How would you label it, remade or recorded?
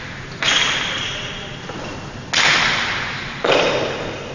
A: recorded